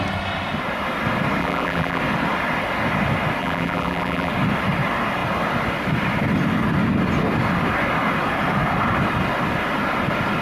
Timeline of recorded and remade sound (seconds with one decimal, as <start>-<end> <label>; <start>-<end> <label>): 0.0-1.4 recorded; 1.4-2.0 remade; 2.0-3.4 recorded; 3.4-4.3 remade; 4.3-10.4 recorded